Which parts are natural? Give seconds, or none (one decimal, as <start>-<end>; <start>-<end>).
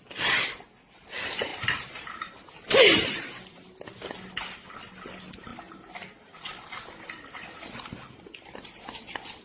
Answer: 0.0-3.5; 4.1-9.4